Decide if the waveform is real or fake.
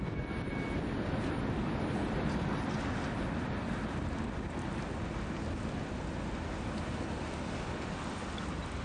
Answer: real